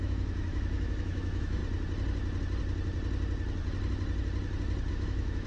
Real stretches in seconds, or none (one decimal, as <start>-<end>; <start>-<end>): 1.6-4.9